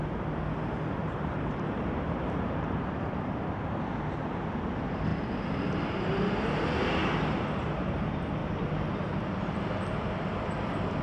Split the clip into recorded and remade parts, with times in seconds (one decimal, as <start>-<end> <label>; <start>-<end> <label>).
0.0-1.0 recorded; 1.0-3.1 remade; 3.1-11.0 recorded